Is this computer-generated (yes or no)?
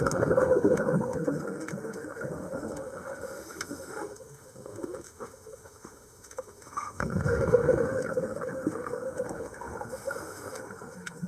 yes